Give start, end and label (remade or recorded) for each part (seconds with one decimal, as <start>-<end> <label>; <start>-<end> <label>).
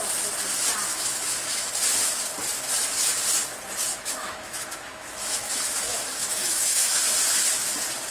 0.0-0.9 recorded; 0.9-1.7 remade; 1.7-3.9 recorded; 3.9-7.0 remade; 7.0-8.1 recorded